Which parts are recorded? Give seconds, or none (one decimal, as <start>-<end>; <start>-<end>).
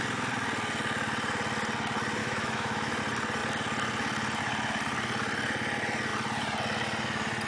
0.0-2.2; 3.0-7.5